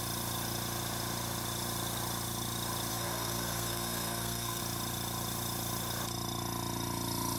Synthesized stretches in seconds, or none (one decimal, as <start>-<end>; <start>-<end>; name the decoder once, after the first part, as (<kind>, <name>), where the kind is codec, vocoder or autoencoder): 2.9-4.6 (codec, SNAC)